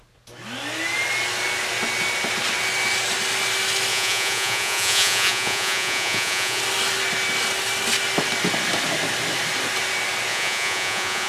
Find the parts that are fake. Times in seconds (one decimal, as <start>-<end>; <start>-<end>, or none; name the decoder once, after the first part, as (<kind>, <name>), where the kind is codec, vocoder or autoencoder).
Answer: 3.9-6.6 (vocoder, Vocos); 10.3-11.3